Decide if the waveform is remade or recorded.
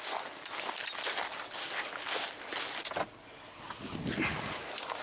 recorded